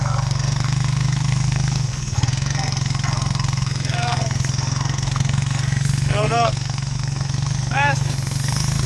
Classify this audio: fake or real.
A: fake